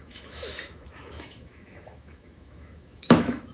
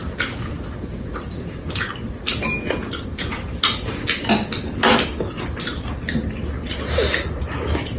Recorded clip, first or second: second